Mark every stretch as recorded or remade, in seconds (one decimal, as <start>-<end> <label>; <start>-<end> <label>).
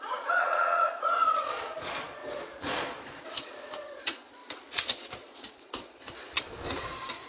0.0-7.3 remade